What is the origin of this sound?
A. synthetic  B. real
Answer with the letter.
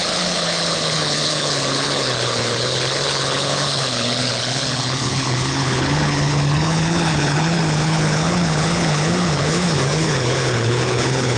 A